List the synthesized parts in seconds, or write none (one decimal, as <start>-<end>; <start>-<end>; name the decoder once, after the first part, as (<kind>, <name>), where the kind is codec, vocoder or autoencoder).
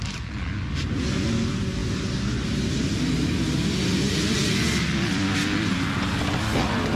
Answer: none